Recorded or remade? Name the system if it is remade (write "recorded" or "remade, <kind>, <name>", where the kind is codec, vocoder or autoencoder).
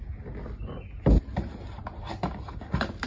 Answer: recorded